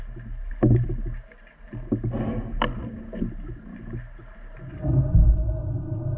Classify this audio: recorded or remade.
recorded